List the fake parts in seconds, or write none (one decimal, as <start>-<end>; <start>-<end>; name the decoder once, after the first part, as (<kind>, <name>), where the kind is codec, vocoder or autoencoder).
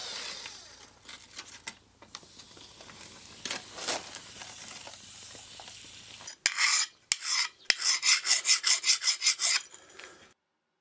none